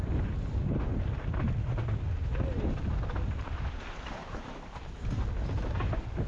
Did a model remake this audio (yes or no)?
no